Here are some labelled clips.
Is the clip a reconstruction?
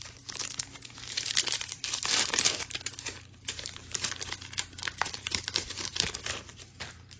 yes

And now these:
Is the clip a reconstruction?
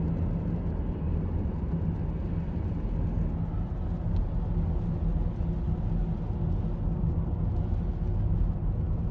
no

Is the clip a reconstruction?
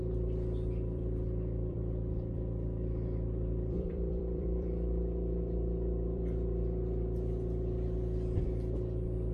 yes